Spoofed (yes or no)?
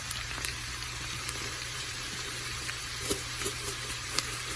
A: yes